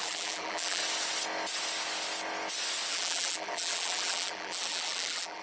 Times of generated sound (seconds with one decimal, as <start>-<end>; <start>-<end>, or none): 0.0-0.8; 2.9-5.4